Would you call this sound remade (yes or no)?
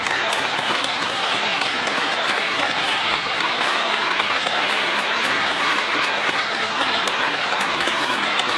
yes